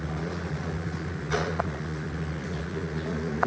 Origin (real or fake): fake